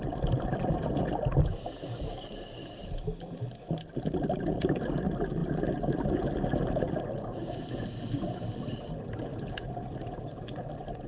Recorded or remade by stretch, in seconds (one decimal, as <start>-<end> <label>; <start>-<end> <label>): 0.0-2.8 recorded; 2.8-3.4 remade; 3.4-7.9 recorded; 7.9-8.8 remade; 8.8-11.1 recorded